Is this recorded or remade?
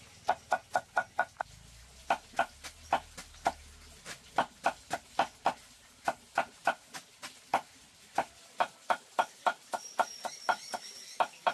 recorded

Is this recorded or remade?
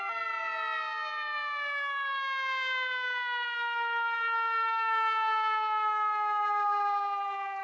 recorded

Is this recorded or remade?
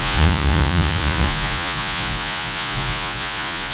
remade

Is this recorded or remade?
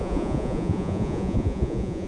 remade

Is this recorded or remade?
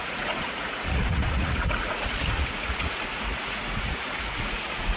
remade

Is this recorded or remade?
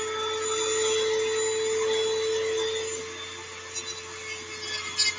recorded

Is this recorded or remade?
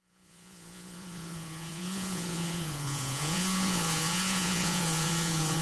remade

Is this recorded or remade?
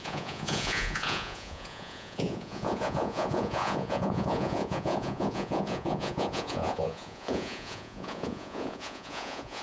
remade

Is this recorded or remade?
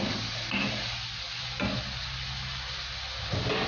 recorded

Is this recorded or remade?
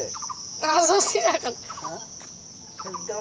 remade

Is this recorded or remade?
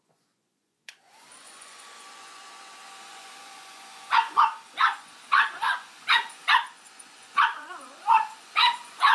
remade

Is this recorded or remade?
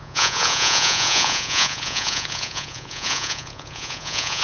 remade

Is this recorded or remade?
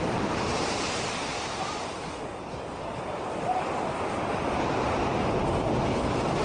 recorded